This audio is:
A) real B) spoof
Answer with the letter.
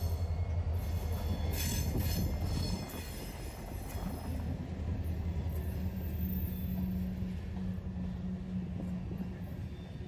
A